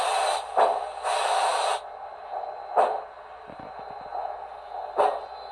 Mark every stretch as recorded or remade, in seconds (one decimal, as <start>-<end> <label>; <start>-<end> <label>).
0.0-1.5 recorded; 1.5-2.5 remade; 2.5-5.5 recorded